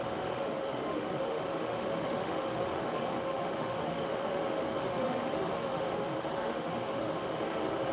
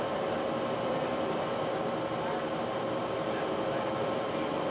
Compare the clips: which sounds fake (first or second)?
first